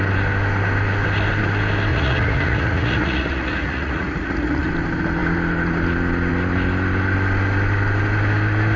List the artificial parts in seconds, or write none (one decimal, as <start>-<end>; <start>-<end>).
1.9-4.7